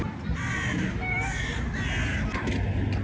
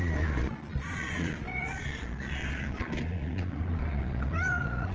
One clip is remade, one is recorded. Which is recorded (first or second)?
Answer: first